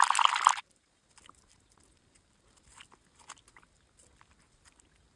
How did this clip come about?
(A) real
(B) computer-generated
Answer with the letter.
A